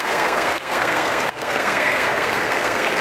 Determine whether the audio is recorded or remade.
remade